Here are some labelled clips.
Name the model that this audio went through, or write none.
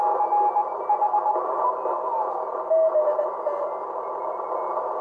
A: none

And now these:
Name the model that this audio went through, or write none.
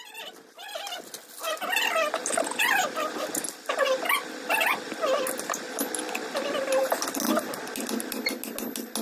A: none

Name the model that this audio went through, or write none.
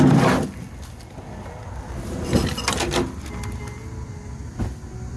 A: none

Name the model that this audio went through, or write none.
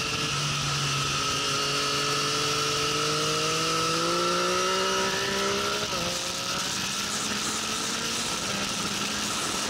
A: none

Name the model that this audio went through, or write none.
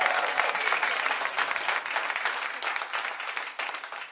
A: none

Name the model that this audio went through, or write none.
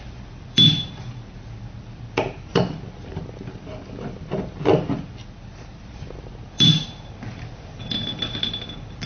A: vocoder, BigVGAN v2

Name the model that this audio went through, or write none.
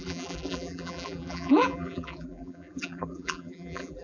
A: vocoder, BigVGAN v2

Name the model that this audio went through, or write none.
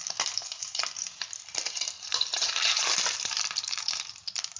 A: vocoder, BigVGAN v2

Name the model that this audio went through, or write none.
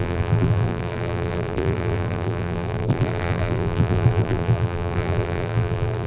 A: vocoder, BigVGAN v2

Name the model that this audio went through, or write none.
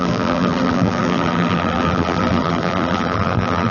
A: vocoder, BigVGAN v2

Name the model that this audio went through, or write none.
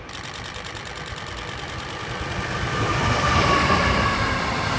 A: vocoder, BigVGAN v2